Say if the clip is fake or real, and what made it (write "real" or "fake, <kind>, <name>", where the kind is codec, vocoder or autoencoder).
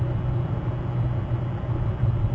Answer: real